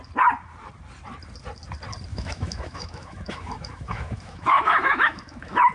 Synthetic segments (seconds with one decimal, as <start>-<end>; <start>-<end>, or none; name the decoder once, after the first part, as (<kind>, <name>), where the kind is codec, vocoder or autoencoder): 2.1-5.7 (autoencoder, DAC-VAE)